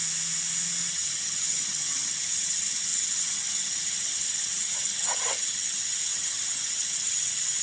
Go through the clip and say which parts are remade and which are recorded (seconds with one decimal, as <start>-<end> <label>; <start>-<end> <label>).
0.0-0.9 recorded; 0.9-7.6 remade